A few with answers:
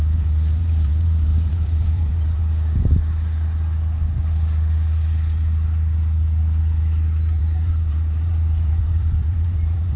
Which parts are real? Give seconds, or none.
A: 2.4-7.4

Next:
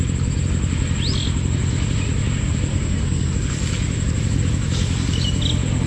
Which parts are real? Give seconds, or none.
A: 0.0-2.7; 3.3-5.9

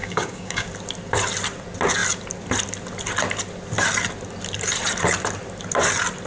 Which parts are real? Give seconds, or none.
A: 0.7-6.3